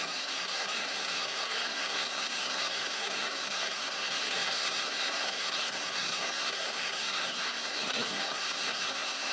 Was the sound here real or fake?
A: fake